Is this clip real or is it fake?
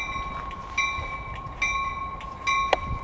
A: real